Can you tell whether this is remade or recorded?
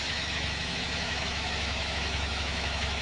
remade